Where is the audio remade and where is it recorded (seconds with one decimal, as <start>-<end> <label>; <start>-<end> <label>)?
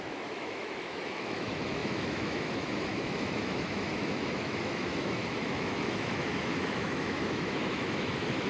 0.0-8.5 remade